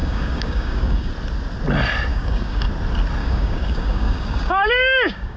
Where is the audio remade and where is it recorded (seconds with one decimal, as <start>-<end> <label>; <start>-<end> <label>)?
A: 0.0-1.1 remade; 1.1-2.1 recorded; 2.1-2.7 remade; 2.7-3.2 recorded; 3.2-5.4 remade